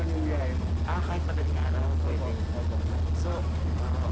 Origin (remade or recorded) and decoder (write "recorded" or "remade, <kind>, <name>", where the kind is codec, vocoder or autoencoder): recorded